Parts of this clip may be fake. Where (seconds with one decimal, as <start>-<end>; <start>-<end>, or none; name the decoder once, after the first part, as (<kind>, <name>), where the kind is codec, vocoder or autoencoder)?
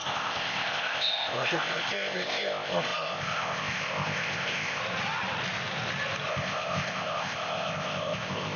0.0-4.8 (codec, ZipCodec); 6.3-8.6